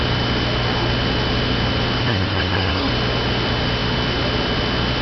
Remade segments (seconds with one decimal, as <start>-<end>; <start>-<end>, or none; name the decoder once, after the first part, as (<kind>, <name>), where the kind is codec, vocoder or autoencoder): 2.0-2.9 (codec, SNAC)